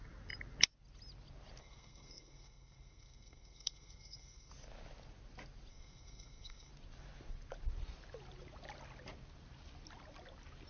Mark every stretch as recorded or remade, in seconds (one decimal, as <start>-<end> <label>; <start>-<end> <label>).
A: 0.0-1.6 recorded; 1.6-4.5 remade; 4.5-5.7 recorded; 5.7-6.7 remade; 6.7-10.7 recorded